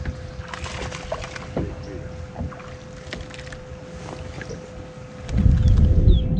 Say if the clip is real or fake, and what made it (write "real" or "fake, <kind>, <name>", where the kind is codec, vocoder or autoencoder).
real